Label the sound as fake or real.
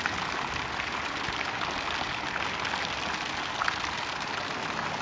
real